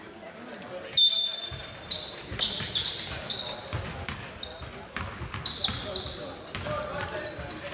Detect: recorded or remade recorded